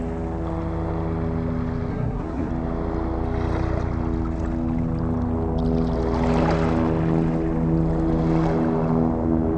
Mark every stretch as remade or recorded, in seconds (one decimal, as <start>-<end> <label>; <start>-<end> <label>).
0.0-1.9 recorded; 1.9-2.5 remade; 2.5-9.6 recorded